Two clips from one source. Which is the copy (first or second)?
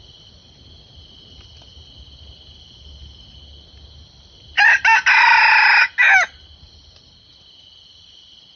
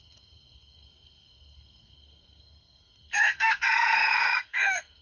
second